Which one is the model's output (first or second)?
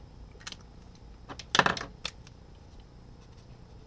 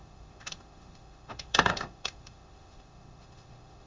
second